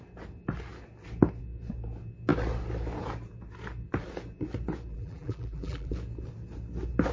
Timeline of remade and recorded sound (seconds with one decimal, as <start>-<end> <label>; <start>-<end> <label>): 0.0-4.9 recorded; 4.9-5.9 remade; 5.9-7.1 recorded